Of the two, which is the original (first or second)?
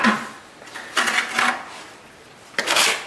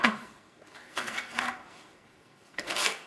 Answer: first